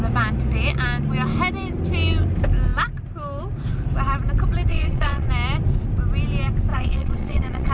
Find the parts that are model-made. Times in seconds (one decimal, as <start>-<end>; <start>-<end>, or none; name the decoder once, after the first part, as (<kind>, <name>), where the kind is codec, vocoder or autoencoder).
4.7-5.3 (vocoder, WaveNeXt); 6.7-7.7